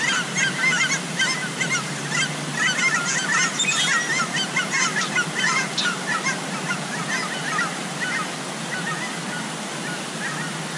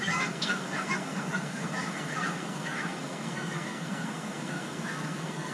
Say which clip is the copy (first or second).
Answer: second